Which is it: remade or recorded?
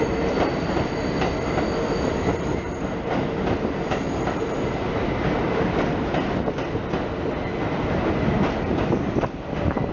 recorded